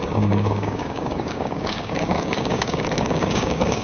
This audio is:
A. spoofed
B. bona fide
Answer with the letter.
A